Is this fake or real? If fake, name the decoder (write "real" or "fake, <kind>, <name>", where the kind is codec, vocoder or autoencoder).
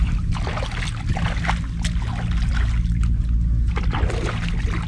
real